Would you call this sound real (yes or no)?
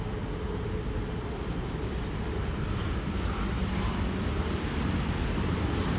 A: yes